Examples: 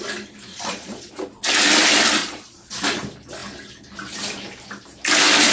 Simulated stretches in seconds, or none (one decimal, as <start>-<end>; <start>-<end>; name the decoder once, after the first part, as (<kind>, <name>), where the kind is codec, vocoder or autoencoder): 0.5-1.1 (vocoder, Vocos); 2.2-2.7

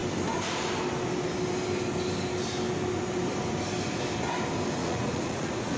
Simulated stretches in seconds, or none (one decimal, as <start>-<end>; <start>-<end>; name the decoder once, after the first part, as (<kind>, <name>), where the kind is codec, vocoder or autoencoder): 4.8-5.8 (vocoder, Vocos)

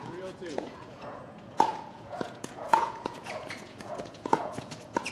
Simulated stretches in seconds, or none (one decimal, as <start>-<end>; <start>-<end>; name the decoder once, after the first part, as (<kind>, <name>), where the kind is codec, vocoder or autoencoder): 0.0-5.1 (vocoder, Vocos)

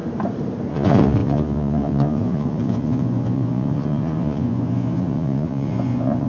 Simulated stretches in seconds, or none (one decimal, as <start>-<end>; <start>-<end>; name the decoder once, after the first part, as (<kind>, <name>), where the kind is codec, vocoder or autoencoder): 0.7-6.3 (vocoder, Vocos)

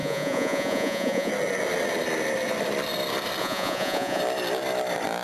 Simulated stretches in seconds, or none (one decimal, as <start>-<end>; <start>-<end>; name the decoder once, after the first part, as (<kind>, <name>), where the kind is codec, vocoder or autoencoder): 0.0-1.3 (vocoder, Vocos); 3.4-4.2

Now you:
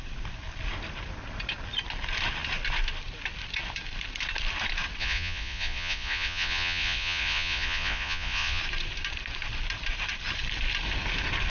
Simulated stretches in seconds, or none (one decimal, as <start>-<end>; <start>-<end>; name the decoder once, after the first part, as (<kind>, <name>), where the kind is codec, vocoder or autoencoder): 5.0-8.6 (vocoder, Vocos)

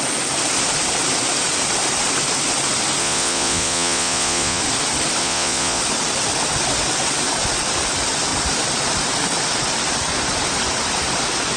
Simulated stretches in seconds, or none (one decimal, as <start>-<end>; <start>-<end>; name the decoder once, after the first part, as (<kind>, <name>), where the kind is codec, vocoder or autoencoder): 3.0-4.6 (vocoder, Vocos); 5.2-5.8

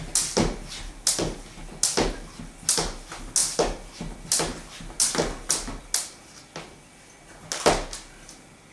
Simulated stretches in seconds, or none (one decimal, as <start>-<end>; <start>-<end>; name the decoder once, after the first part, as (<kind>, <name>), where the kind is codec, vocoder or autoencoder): none